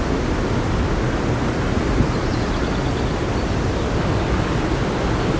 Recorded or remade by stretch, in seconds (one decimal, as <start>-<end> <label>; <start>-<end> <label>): 0.0-5.4 recorded

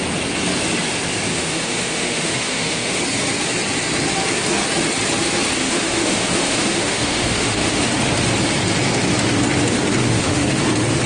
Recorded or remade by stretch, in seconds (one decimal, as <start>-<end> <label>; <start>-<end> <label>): 0.0-1.3 recorded; 1.3-3.0 remade; 3.0-5.6 recorded; 5.6-7.8 remade; 7.8-10.0 recorded; 10.0-10.6 remade; 10.6-11.1 recorded

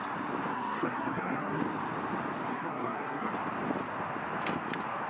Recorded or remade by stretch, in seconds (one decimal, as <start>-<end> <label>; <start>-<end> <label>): 0.0-0.5 recorded; 0.5-1.6 remade; 1.6-2.5 recorded; 2.5-3.3 remade; 3.3-5.1 recorded

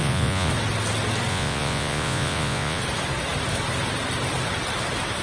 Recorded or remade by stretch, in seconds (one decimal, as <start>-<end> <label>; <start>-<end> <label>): 0.0-0.5 remade; 0.5-1.3 recorded; 1.3-2.8 remade; 2.8-5.2 recorded

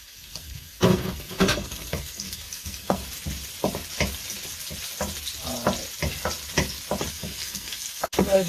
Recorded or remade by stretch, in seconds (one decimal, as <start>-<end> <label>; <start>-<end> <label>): 0.0-3.0 remade; 3.0-7.1 recorded; 7.1-8.5 remade

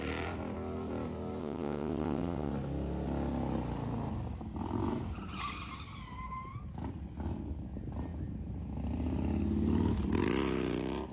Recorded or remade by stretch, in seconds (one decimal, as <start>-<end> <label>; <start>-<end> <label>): 0.0-1.4 recorded; 1.4-2.5 remade; 2.5-11.1 recorded

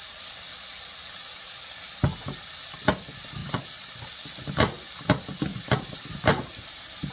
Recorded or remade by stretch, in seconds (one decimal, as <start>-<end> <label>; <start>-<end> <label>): 0.0-3.4 recorded; 3.4-4.0 remade; 4.0-5.5 recorded; 5.5-7.1 remade

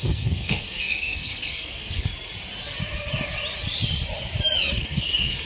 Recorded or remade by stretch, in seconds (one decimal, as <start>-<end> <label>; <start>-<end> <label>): 0.0-2.1 remade; 2.1-4.7 recorded; 4.7-5.5 remade